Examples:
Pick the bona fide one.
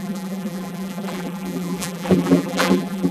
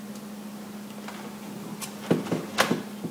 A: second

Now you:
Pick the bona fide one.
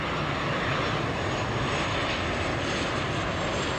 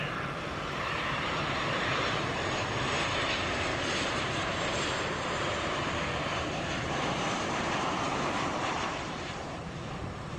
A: first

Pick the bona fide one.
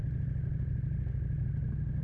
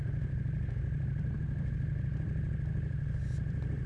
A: first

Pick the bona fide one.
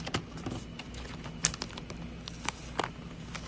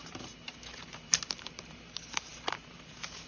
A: first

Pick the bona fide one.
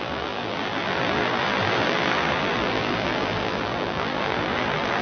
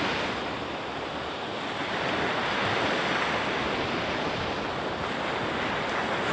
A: second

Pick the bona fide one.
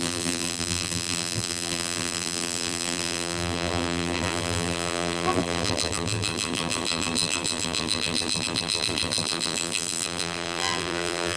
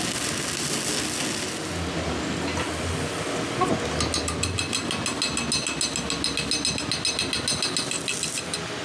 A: second